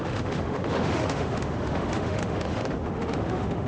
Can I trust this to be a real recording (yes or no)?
no